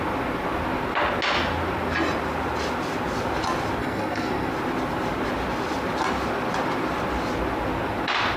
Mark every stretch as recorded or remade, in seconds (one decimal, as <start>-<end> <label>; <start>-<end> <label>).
0.0-3.8 recorded; 3.8-4.5 remade; 4.5-8.4 recorded